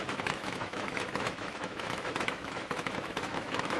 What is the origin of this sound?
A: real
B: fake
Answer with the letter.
B